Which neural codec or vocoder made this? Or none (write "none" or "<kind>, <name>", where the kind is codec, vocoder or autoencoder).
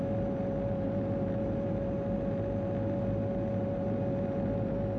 none